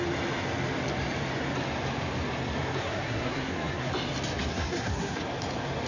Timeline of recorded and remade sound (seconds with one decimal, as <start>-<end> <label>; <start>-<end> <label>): 0.0-2.8 recorded; 2.8-3.9 remade; 3.9-4.5 recorded; 4.5-5.2 remade; 5.2-5.9 recorded